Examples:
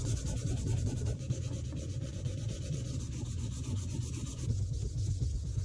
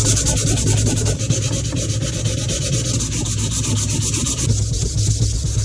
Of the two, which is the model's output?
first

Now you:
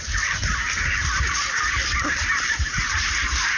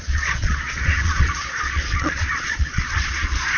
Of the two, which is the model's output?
second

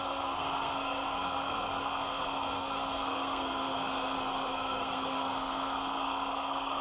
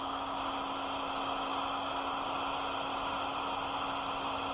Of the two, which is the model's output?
first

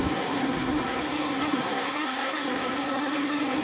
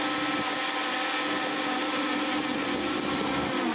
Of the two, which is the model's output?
first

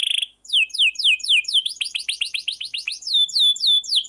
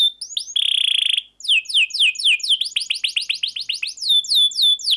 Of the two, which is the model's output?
first